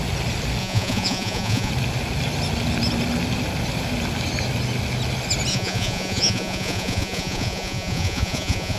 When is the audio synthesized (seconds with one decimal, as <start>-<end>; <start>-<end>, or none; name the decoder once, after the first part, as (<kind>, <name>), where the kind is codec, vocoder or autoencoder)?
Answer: 0.6-1.7 (vocoder, Vocos); 5.5-8.8